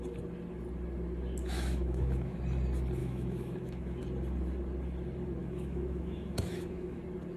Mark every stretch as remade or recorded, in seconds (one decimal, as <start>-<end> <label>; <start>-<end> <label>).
0.0-1.4 recorded; 1.4-2.4 remade; 2.4-3.0 recorded; 3.0-4.0 remade; 4.0-5.4 recorded; 5.4-7.0 remade; 7.0-7.4 recorded